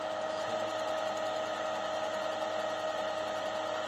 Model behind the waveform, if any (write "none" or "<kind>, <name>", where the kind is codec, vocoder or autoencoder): none